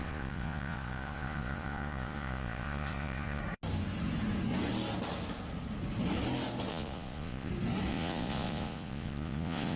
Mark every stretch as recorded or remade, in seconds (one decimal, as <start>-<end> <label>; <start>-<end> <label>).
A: 0.0-3.4 remade; 3.4-6.7 recorded; 6.7-7.5 remade; 7.5-7.9 recorded; 7.9-9.8 remade